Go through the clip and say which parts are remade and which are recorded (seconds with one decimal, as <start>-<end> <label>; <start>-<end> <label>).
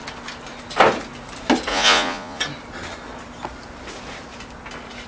0.0-1.7 recorded; 1.7-2.4 remade; 2.4-5.1 recorded